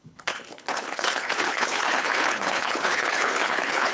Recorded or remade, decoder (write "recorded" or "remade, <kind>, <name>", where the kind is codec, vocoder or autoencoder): remade, codec, HILCodec